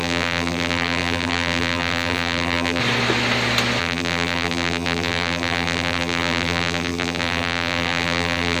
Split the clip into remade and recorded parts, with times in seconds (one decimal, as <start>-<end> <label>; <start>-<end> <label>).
0.0-2.8 remade; 2.8-3.8 recorded; 3.8-8.6 remade